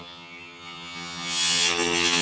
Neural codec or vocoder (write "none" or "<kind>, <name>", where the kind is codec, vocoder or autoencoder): vocoder, HiFi-GAN